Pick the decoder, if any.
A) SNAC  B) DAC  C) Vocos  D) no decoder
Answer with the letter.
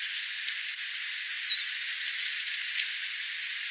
D